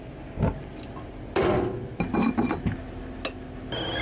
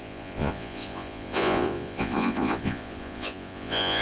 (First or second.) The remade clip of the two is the second